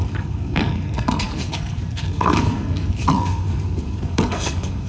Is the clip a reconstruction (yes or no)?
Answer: yes